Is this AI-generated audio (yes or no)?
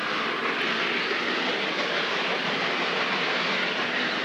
no